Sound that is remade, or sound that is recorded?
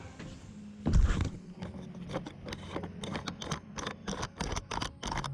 recorded